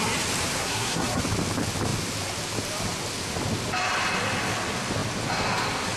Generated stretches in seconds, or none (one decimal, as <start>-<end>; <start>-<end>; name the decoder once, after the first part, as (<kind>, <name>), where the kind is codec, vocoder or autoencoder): 0.6-1.2 (codec, SNAC)